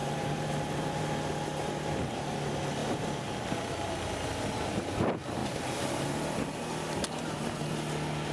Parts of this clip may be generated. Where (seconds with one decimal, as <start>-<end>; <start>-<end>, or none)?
0.0-1.0; 2.8-3.9